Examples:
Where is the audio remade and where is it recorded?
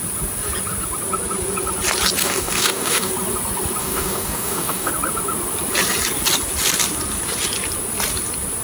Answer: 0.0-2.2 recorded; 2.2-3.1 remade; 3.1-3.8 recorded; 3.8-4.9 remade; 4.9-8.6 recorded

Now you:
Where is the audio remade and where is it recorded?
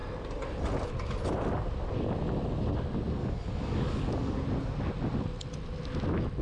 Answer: 0.0-3.2 recorded; 3.2-4.3 remade; 4.3-6.4 recorded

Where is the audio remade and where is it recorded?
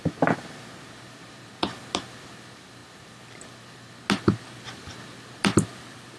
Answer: 0.0-6.2 recorded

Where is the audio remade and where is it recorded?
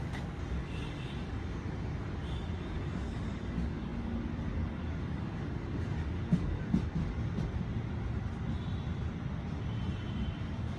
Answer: 0.0-7.0 remade; 7.0-10.4 recorded; 10.4-10.8 remade